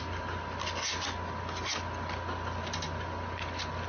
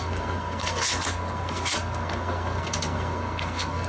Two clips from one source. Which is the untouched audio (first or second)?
first